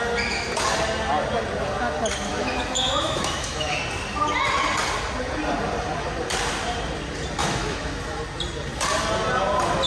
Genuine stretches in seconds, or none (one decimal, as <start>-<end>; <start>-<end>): 0.0-2.3; 3.8-7.4; 8.2-9.9